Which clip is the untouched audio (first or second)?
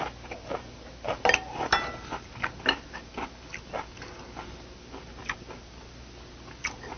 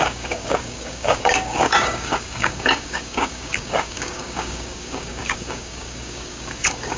first